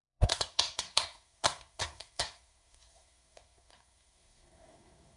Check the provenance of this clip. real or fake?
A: fake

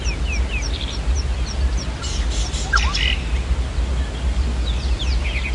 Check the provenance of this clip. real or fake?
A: real